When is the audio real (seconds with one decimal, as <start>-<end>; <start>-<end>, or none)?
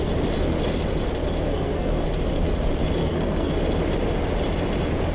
0.0-1.5; 2.1-3.0; 3.5-5.1